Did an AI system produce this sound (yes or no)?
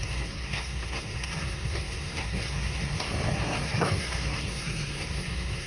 yes